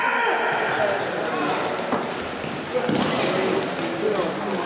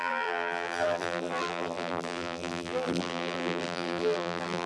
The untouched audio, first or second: first